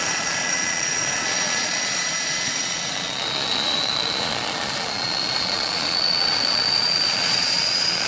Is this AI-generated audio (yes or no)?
yes